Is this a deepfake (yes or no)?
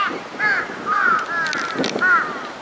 no